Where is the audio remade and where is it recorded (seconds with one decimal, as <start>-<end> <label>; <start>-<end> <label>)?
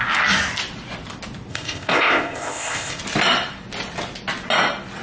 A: 0.0-1.5 recorded; 1.5-3.0 remade; 3.0-5.0 recorded